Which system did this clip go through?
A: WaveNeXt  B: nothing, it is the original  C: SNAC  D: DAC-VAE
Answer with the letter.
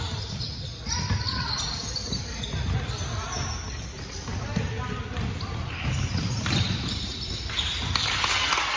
B